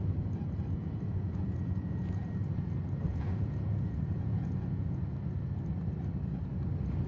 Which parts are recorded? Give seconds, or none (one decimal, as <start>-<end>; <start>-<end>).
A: 0.0-0.8; 2.2-3.1; 5.0-7.1